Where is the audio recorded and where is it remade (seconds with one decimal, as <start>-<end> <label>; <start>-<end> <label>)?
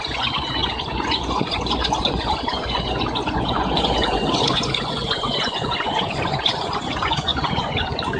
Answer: 0.0-8.2 remade